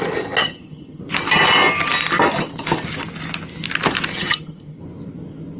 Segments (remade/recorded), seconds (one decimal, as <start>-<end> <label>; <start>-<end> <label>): 0.0-0.4 recorded; 0.4-1.0 remade; 1.0-4.1 recorded; 4.1-4.8 remade; 4.8-5.6 recorded